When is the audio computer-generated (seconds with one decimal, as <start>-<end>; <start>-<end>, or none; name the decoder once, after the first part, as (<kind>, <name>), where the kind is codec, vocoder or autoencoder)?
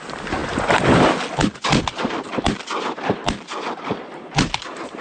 none